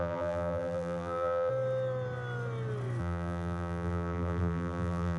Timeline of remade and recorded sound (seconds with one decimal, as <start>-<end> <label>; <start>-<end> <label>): 0.0-1.5 remade; 1.5-3.0 recorded; 3.0-5.2 remade

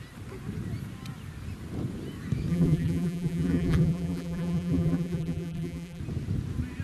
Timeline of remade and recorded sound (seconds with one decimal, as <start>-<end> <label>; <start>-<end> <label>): 0.0-2.5 recorded; 2.5-6.0 remade; 6.0-6.8 recorded

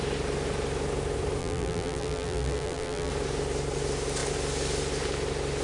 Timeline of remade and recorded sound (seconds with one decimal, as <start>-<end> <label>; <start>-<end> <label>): 0.0-1.4 recorded; 1.4-3.1 remade; 3.1-5.6 recorded